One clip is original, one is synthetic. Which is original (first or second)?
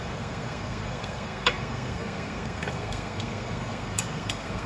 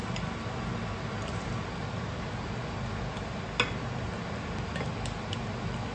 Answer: second